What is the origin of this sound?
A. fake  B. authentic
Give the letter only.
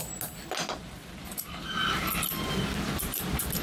B